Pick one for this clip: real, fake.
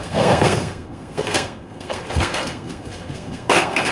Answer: fake